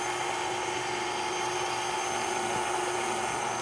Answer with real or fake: real